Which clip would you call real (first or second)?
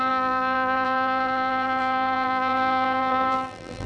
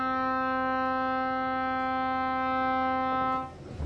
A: second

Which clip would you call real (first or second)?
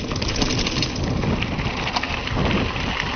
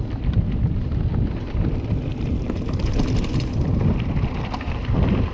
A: first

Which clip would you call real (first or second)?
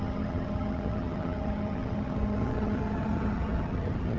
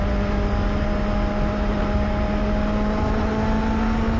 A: second